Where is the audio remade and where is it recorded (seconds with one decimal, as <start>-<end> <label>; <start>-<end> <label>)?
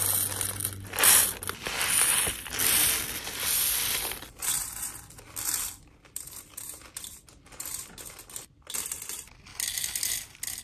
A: 0.0-2.6 recorded; 2.6-7.7 remade; 7.7-10.6 recorded